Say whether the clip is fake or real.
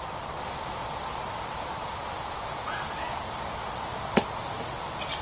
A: real